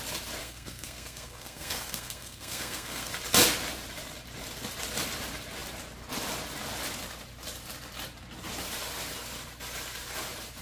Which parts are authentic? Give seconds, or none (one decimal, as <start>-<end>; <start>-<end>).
0.0-0.4; 3.1-10.6